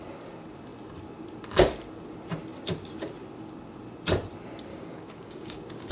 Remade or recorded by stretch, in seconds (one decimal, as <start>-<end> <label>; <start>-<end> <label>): 0.0-4.7 recorded; 4.7-5.9 remade